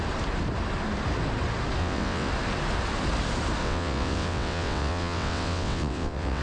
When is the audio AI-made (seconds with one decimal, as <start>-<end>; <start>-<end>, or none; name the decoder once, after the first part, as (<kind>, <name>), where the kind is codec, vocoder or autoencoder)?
1.8-2.3 (vocoder, WaveNeXt); 3.6-6.4